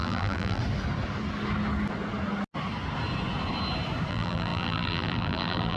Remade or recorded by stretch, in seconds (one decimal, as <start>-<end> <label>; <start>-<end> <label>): 0.0-0.6 remade; 0.6-4.1 recorded; 4.1-5.8 remade